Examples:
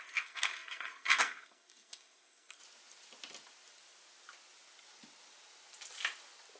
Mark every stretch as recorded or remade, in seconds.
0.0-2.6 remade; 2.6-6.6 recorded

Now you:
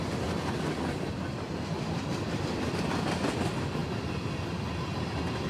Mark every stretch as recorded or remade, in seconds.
0.0-5.5 recorded

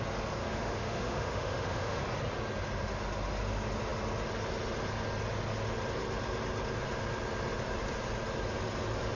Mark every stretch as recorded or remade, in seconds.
0.0-0.4 recorded; 0.4-2.0 remade; 2.0-9.2 recorded

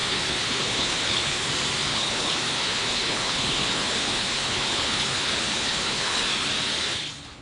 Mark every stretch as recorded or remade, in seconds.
0.0-1.5 remade; 1.5-1.9 recorded; 1.9-6.3 remade; 6.3-6.8 recorded; 6.8-7.4 remade

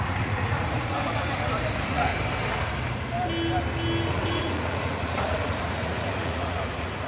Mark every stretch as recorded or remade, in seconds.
0.0-1.0 remade; 1.0-1.7 recorded; 1.7-2.1 remade; 2.1-4.1 recorded; 4.1-7.1 remade

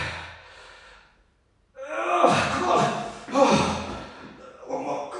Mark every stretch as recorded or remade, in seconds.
0.0-5.2 recorded

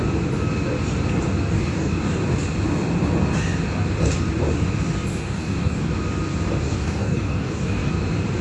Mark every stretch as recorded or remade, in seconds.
0.0-1.5 recorded; 1.5-2.2 remade; 2.2-5.1 recorded; 5.1-5.9 remade; 5.9-6.6 recorded; 6.6-7.9 remade; 7.9-8.4 recorded

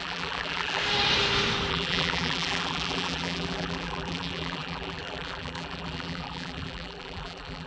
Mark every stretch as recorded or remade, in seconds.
0.0-0.8 remade; 0.8-1.7 recorded; 1.7-7.7 remade